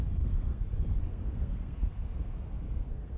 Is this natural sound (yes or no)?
no